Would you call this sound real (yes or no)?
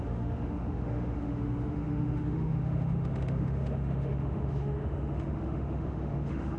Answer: no